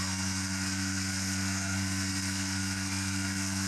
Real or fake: fake